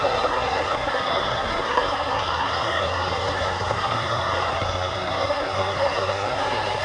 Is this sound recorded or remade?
remade